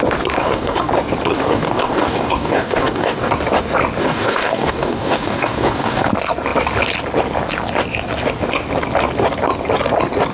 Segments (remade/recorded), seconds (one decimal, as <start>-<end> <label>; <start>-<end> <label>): 0.0-0.4 recorded; 0.4-0.9 remade; 0.9-1.3 recorded; 1.3-3.3 remade; 3.3-4.0 recorded; 4.0-6.1 remade; 6.1-10.3 recorded